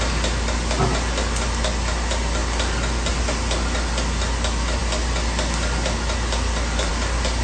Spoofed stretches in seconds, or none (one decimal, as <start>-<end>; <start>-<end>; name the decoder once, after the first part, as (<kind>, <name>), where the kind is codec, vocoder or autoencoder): none